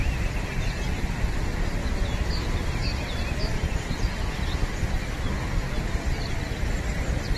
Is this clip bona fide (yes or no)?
yes